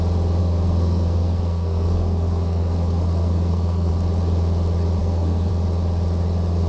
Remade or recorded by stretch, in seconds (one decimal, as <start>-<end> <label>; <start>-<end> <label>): 0.0-0.4 recorded; 0.4-3.9 remade; 3.9-5.0 recorded; 5.0-5.5 remade; 5.5-6.7 recorded